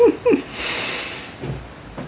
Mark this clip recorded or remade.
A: recorded